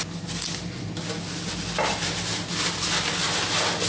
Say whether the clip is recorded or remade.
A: recorded